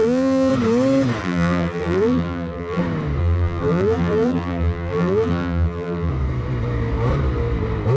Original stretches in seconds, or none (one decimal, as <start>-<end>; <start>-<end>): 0.5-1.2; 2.8-3.2; 6.1-8.0